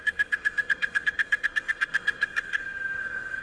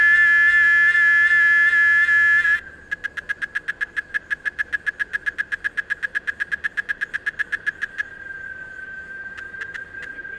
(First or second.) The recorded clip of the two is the second